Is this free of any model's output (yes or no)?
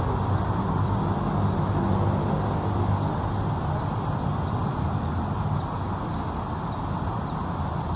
yes